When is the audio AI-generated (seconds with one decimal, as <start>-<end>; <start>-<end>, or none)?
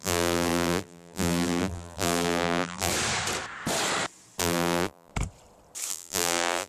0.0-2.9; 4.4-5.1; 5.9-6.7